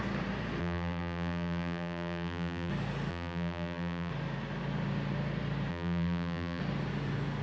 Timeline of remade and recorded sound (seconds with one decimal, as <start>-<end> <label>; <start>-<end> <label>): 0.0-0.6 recorded; 0.6-2.7 remade; 2.7-3.1 recorded; 3.1-4.1 remade; 4.1-5.7 recorded; 5.7-6.6 remade; 6.6-7.4 recorded